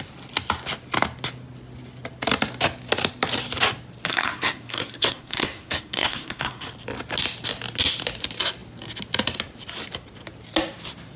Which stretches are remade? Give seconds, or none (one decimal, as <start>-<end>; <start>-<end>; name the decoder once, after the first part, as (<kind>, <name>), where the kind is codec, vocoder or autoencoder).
4.1-6.7 (codec, SNAC)